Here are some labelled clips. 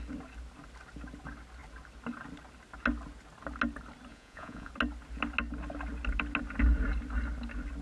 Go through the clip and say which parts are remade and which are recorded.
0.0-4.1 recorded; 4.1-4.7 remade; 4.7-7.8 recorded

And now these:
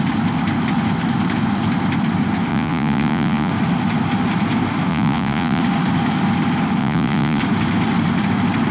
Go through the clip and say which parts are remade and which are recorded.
0.0-2.5 recorded; 2.5-3.5 remade; 3.5-4.9 recorded; 4.9-5.6 remade; 5.6-6.8 recorded; 6.8-7.4 remade; 7.4-8.7 recorded

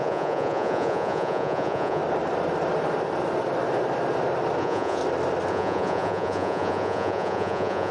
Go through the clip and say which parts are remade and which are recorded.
0.0-2.0 remade; 2.0-4.6 recorded; 4.6-5.0 remade; 5.0-5.5 recorded; 5.5-7.9 remade

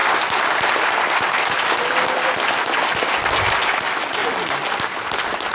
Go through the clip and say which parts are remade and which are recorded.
0.0-5.5 recorded

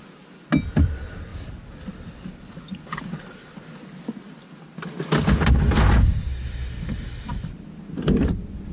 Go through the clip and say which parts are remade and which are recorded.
0.0-8.7 recorded

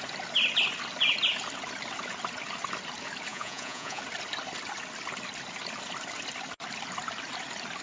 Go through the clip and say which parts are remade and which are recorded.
0.0-3.3 recorded; 3.3-4.0 remade; 4.0-7.8 recorded

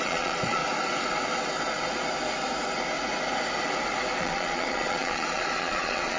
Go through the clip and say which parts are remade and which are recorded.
0.0-0.6 remade; 0.6-4.2 recorded; 4.2-6.2 remade